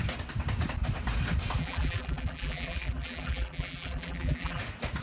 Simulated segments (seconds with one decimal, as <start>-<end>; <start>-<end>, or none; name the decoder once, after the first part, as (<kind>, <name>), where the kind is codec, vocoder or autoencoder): 1.6-4.6 (vocoder, BigVGAN v2)